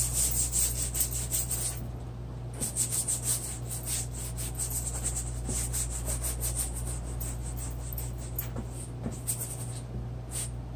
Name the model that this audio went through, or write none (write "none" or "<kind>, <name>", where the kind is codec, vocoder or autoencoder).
none